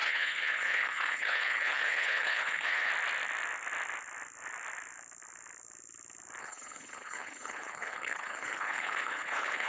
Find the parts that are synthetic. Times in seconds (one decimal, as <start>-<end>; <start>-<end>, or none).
0.0-2.9; 6.4-9.7